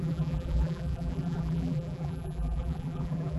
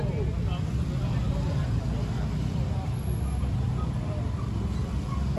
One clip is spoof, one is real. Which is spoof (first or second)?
first